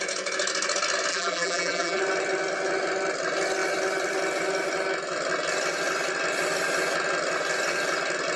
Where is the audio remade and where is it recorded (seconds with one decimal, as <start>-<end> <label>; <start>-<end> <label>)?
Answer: 0.0-1.1 recorded; 1.1-2.0 remade; 2.0-8.4 recorded